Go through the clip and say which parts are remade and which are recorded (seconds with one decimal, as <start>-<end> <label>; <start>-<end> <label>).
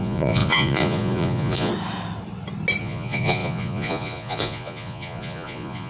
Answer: 0.0-1.7 remade; 1.7-2.8 recorded; 2.8-5.9 remade